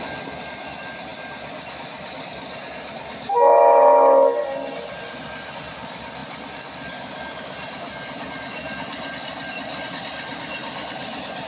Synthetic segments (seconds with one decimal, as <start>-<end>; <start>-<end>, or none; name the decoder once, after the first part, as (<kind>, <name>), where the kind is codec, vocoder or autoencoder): none